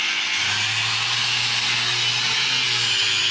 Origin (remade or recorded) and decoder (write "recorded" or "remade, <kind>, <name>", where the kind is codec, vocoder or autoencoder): recorded